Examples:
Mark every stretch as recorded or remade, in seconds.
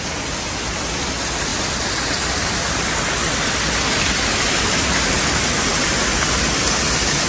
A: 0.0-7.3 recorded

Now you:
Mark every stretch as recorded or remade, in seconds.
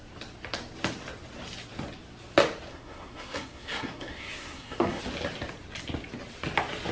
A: 0.0-2.7 recorded; 2.7-5.0 remade; 5.0-6.9 recorded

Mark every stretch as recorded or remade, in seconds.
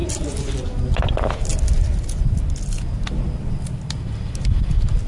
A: 0.0-5.1 recorded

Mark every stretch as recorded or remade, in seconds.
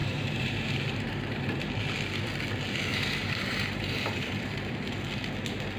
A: 0.0-1.7 remade; 1.7-2.9 recorded; 2.9-4.7 remade; 4.7-5.8 recorded